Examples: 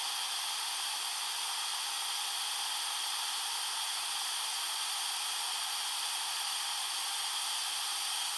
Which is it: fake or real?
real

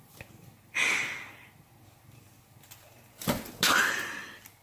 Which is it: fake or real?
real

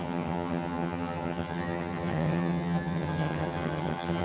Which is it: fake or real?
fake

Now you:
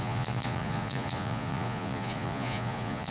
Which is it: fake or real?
fake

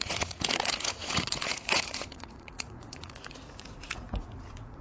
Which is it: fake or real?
fake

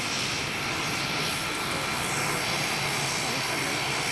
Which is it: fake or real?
real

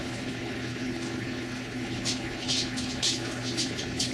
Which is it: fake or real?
fake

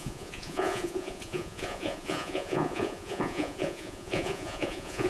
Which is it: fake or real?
fake